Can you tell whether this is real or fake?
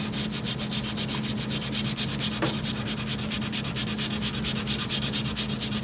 real